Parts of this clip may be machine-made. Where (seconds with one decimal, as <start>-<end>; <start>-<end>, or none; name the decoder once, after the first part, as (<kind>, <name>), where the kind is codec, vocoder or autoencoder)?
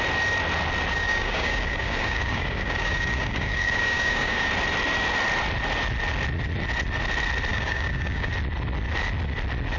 0.9-4.5 (codec, DAC); 7.5-8.3